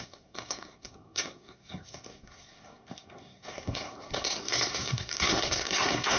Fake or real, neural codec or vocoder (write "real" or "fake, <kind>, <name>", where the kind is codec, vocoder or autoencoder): fake, codec, SNAC